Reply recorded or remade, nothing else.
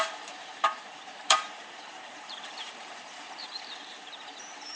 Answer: remade